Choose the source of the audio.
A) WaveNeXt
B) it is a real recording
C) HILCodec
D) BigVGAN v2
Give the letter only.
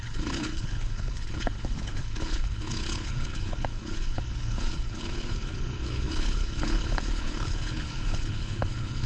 C